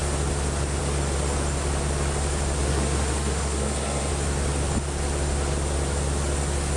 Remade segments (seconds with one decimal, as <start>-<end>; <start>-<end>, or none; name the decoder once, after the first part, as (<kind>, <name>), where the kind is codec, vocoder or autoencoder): 2.6-4.1 (codec, SNAC)